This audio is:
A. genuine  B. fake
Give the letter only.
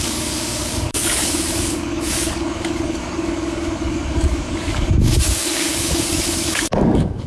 B